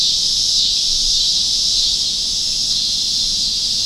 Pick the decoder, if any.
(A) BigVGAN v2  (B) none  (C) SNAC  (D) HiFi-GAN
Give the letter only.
B